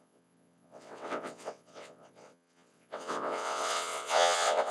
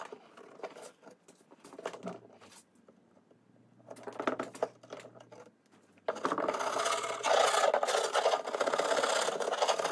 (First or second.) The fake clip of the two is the first